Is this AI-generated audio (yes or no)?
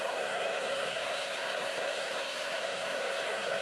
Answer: yes